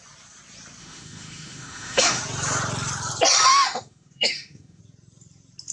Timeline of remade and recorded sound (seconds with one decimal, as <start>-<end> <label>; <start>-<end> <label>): 0.0-0.8 recorded; 0.8-2.2 remade; 2.2-3.5 recorded; 3.5-4.8 remade; 4.8-5.7 recorded